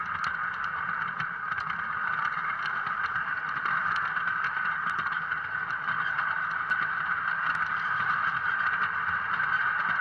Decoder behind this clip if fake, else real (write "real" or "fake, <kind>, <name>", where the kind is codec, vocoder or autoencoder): real